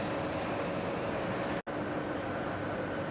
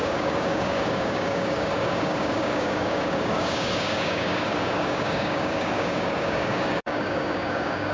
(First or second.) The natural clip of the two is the first